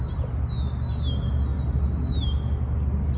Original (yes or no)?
yes